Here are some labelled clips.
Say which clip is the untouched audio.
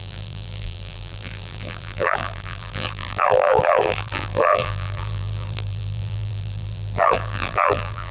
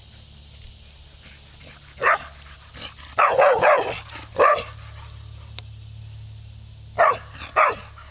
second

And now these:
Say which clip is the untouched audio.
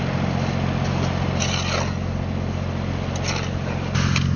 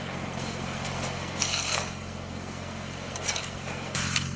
first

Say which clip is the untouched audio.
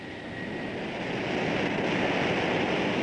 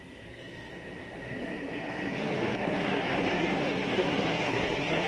first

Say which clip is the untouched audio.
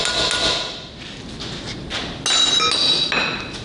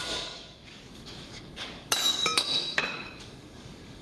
first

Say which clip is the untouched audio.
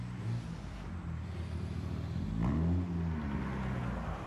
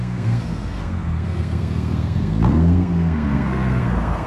first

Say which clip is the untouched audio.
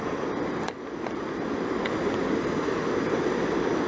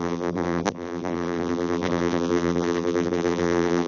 first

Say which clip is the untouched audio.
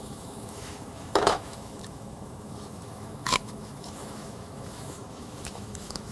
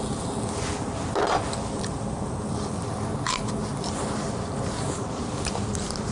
second